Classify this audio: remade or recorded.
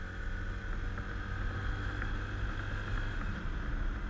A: recorded